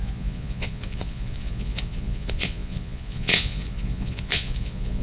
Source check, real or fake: fake